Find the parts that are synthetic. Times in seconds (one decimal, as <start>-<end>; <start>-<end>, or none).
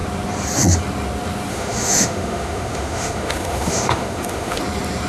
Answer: 1.5-4.6